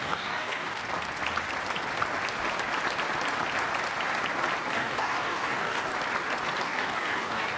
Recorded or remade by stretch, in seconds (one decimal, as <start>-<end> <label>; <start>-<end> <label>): 0.0-0.8 remade; 0.8-4.7 recorded; 4.7-5.9 remade; 5.9-6.6 recorded; 6.6-7.6 remade